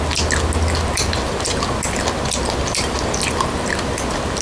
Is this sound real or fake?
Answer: real